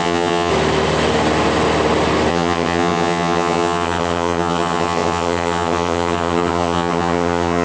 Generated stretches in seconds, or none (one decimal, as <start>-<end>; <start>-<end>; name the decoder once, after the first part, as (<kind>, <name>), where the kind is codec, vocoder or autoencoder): 0.0-0.5 (vocoder, HiFi-GAN); 2.3-7.6